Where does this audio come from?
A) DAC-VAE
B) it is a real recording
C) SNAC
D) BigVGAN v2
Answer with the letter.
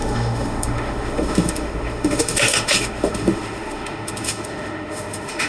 A